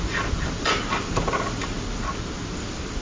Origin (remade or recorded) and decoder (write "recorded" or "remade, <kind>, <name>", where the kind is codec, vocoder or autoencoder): recorded